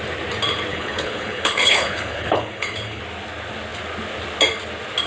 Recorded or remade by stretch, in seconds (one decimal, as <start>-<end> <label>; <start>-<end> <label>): 0.0-0.7 recorded; 0.7-3.0 remade; 3.0-5.1 recorded